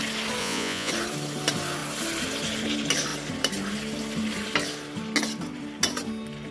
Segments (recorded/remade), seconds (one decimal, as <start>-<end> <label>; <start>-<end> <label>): 0.0-0.4 recorded; 0.4-0.9 remade; 0.9-6.5 recorded